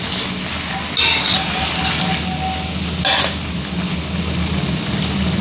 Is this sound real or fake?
real